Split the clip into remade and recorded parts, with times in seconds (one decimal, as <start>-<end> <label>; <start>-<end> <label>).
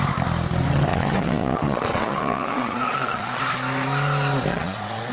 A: 0.0-0.9 recorded; 0.9-3.4 remade; 3.4-4.5 recorded; 4.5-5.1 remade